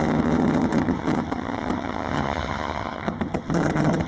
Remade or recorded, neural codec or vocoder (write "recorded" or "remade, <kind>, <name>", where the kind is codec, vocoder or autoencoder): remade, vocoder, HiFi-GAN